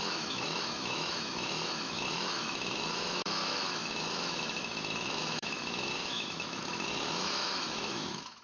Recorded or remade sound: remade